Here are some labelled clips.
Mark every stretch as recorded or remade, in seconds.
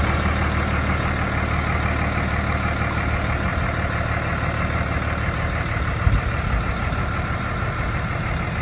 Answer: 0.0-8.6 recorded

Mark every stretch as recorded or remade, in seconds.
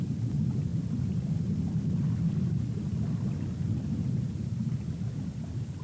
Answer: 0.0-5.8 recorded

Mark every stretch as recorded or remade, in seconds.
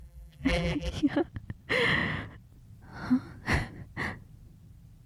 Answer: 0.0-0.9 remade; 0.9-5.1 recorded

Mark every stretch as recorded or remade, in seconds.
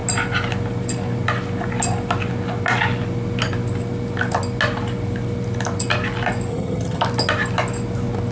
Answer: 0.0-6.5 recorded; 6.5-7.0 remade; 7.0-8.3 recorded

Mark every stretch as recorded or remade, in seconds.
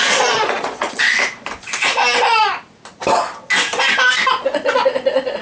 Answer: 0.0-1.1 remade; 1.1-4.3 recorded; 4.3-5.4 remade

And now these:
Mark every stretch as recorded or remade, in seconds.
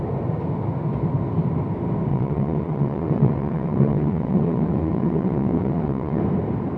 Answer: 0.0-2.1 recorded; 2.1-6.2 remade; 6.2-6.8 recorded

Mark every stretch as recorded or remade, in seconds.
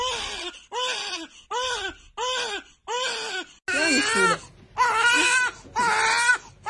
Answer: 0.0-6.7 recorded